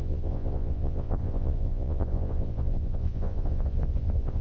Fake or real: fake